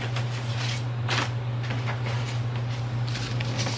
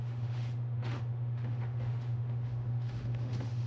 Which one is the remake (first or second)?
second